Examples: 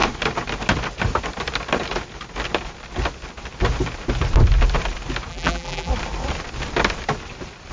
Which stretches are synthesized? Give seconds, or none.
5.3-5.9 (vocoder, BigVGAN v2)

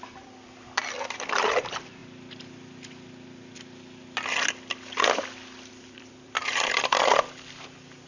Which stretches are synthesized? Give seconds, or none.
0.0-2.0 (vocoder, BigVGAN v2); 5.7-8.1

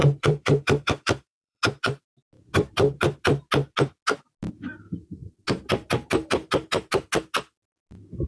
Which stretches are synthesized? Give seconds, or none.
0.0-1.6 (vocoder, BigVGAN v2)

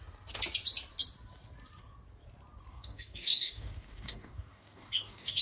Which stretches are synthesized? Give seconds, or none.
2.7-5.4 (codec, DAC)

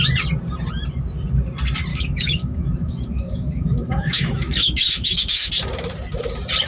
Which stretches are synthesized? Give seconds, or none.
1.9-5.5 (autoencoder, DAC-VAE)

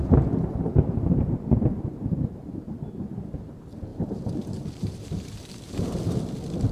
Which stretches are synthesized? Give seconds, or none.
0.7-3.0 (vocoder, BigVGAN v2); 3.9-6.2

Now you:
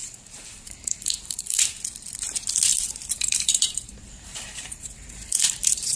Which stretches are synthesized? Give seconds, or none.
0.0-1.6 (vocoder, BigVGAN v2); 2.7-6.0